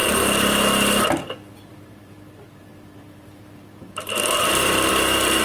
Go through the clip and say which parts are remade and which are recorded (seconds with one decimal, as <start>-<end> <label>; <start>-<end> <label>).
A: 0.0-1.1 remade; 1.1-1.7 recorded; 1.7-4.9 remade; 4.9-5.4 recorded